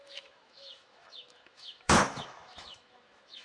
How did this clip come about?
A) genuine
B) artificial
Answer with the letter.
B